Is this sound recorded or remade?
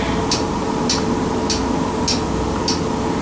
recorded